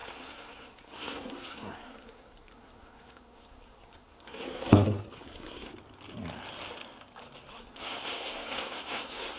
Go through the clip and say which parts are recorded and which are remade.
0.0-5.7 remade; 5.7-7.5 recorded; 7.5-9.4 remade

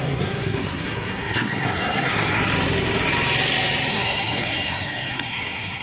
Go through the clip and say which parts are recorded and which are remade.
0.0-2.4 remade; 2.4-3.9 recorded; 3.9-5.8 remade

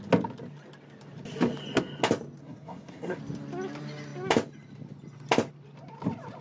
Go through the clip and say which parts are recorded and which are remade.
0.0-2.4 recorded; 2.4-3.2 remade; 3.2-6.4 recorded